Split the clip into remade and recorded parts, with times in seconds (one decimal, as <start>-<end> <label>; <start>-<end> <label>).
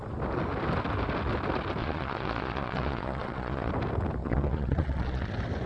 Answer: 0.0-1.8 recorded; 1.8-3.7 remade; 3.7-4.2 recorded; 4.2-5.3 remade; 5.3-5.7 recorded